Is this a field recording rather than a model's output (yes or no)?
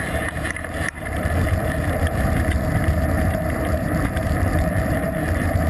no